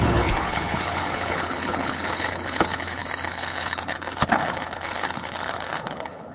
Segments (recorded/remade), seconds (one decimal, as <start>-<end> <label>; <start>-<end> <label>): 0.0-6.3 remade